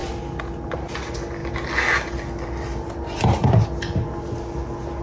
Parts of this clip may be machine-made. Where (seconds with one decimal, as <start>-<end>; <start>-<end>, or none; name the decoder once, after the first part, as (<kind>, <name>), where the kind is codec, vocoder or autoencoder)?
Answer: none